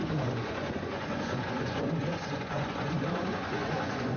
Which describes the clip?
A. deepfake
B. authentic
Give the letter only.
A